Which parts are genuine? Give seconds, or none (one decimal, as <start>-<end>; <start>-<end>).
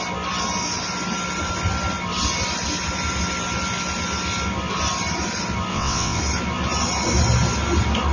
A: 0.0-5.7; 6.2-8.1